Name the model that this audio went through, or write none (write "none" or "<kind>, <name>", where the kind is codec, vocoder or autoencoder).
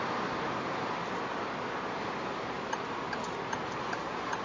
none